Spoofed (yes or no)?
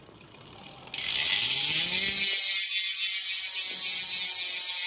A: no